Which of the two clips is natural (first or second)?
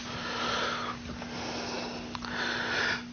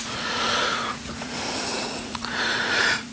first